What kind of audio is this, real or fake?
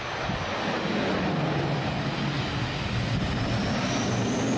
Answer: real